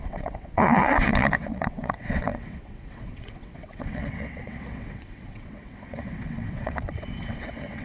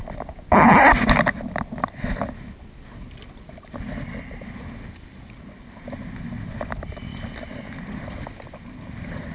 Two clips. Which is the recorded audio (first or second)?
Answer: second